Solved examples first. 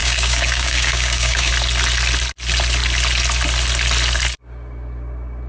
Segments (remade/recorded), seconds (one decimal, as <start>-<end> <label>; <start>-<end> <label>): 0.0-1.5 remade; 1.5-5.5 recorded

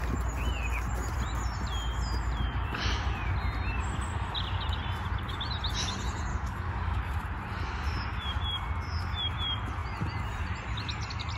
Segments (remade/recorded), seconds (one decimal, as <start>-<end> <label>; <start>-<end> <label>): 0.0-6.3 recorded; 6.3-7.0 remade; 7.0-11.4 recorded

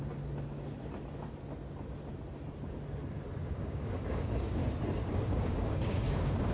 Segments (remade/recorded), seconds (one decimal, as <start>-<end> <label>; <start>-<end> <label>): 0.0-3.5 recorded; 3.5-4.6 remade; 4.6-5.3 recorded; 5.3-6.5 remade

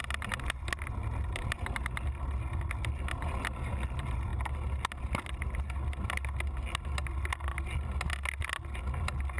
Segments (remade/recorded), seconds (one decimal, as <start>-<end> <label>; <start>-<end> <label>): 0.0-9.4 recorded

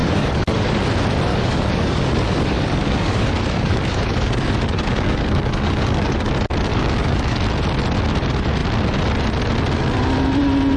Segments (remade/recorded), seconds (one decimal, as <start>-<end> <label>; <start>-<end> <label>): 0.0-0.8 remade; 0.8-1.3 recorded; 1.3-6.3 remade; 6.3-6.7 recorded; 6.7-7.4 remade; 7.4-10.8 recorded